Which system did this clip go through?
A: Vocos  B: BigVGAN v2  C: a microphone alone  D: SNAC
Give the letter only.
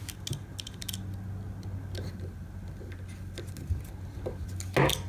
C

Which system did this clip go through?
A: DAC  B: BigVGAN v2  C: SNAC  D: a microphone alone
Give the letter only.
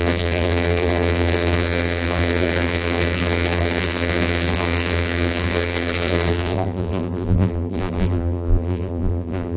B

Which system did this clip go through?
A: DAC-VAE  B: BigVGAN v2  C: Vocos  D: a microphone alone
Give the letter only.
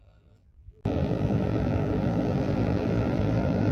B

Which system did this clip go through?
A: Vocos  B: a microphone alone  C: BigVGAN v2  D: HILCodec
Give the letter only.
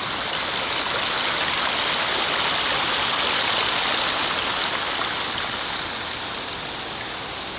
B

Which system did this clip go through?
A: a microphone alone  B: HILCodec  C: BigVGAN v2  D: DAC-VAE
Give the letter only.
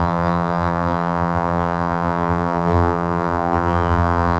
C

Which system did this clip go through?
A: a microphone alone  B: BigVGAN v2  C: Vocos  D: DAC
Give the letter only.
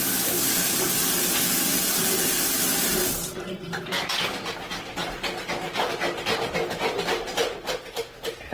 A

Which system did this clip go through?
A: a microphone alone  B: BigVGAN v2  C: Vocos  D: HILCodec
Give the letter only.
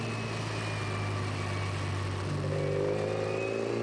A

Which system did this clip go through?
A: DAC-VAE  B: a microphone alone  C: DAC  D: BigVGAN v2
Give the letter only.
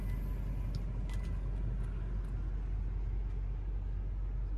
B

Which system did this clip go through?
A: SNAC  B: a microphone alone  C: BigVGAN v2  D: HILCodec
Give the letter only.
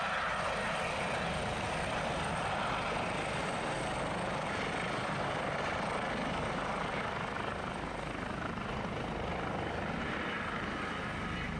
B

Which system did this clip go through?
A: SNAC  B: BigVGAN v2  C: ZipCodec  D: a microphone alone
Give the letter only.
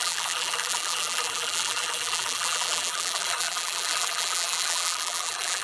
B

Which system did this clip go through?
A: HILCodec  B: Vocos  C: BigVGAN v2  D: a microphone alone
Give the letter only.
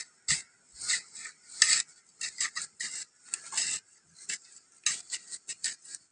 D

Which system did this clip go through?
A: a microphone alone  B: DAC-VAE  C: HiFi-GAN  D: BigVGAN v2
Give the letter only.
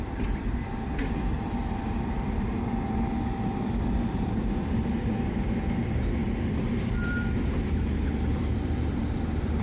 D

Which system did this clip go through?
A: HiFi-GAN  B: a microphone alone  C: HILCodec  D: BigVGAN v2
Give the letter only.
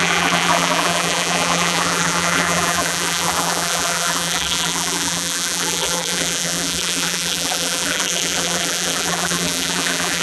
D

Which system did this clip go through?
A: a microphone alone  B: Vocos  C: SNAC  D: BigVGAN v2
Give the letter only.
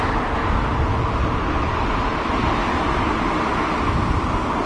A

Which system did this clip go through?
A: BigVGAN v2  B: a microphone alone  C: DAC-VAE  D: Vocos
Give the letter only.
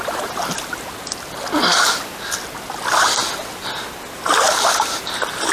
B